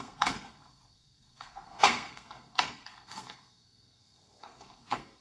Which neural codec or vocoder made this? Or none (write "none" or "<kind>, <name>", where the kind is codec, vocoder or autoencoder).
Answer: codec, SNAC